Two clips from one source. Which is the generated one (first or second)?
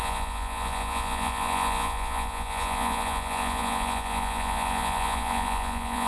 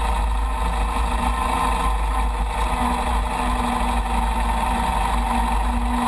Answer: first